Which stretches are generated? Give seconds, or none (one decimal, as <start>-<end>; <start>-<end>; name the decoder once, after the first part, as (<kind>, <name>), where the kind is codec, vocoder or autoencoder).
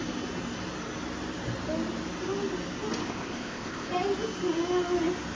3.0-3.9 (codec, ZipCodec)